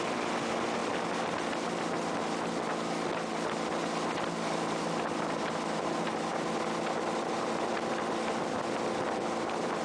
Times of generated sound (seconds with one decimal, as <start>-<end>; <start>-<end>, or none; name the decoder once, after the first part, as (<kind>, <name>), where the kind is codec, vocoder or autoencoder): none